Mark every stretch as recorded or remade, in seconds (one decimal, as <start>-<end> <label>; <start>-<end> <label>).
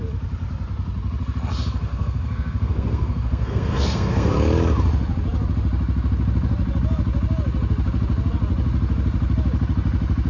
0.0-1.9 recorded; 1.9-4.3 remade; 4.3-10.3 recorded